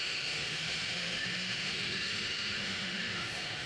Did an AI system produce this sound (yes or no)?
yes